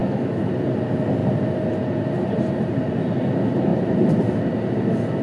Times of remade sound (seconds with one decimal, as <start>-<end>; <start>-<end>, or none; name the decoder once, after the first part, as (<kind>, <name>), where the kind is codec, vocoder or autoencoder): 0.0-0.5 (autoencoder, DAC-VAE)